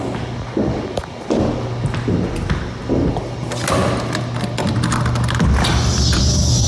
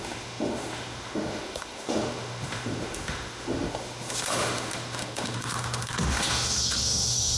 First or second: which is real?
first